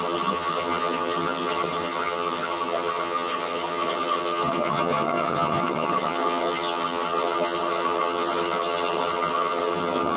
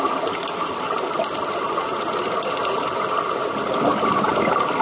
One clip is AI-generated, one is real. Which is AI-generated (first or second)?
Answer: first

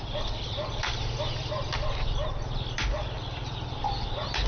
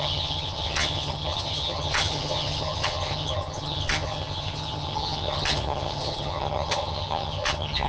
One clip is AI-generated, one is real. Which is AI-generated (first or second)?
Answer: second